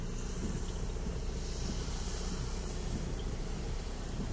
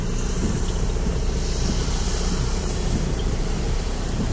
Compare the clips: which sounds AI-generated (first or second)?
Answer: second